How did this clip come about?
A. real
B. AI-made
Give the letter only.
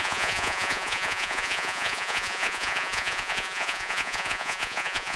B